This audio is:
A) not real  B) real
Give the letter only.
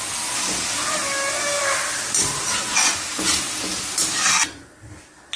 B